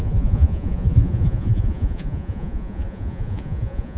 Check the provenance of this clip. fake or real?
fake